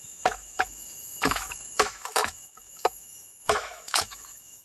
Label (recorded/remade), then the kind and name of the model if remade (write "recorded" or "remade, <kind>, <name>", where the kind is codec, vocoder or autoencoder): remade, autoencoder, DAC-VAE